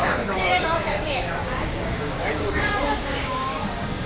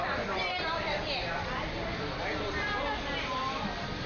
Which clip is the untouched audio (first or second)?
second